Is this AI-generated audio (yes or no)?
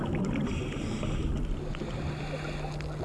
no